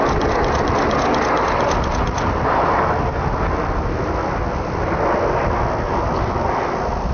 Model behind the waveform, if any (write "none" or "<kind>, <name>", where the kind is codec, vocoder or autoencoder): none